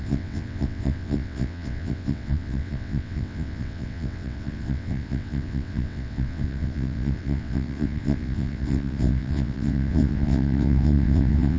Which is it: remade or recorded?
remade